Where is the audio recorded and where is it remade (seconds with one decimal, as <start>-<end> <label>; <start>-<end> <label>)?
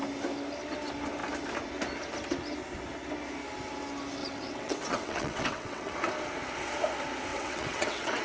0.0-4.2 recorded; 4.2-5.9 remade; 5.9-7.3 recorded; 7.3-8.2 remade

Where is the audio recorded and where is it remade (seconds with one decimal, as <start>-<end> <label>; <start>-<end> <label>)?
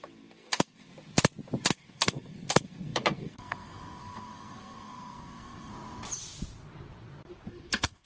0.0-0.9 remade; 0.9-1.7 recorded; 1.7-5.7 remade; 5.7-7.5 recorded; 7.5-8.1 remade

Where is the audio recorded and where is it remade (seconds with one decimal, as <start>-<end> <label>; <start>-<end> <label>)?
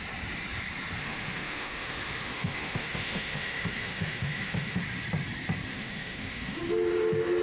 0.0-1.0 recorded; 1.0-4.8 remade; 4.8-5.7 recorded; 5.7-6.6 remade; 6.6-7.4 recorded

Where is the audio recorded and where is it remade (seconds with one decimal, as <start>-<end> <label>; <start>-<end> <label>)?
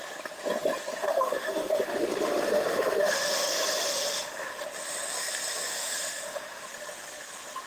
0.0-1.0 recorded; 1.0-3.5 remade; 3.5-3.9 recorded; 3.9-4.6 remade; 4.6-5.7 recorded; 5.7-6.7 remade; 6.7-7.7 recorded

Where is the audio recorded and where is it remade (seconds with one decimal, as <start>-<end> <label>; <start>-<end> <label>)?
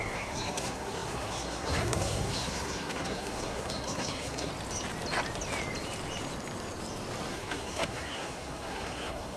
0.0-4.5 remade; 4.5-7.3 recorded; 7.3-9.4 remade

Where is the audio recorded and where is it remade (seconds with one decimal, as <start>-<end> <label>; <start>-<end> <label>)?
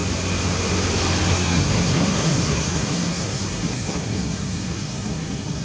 0.0-1.3 recorded; 1.3-5.6 remade